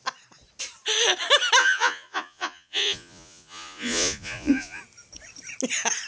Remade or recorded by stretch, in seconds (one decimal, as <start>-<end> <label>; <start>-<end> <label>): 0.0-1.6 recorded; 1.6-4.8 remade; 4.8-6.1 recorded